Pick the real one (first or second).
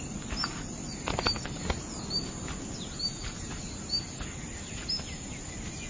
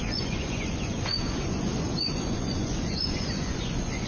first